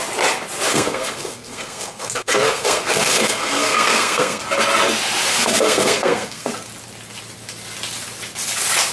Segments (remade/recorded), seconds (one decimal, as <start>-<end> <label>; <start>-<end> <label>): 0.0-0.7 recorded; 0.7-4.4 remade; 4.4-5.3 recorded; 5.3-6.5 remade; 6.5-8.9 recorded